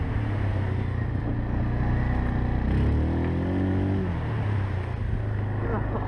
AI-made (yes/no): no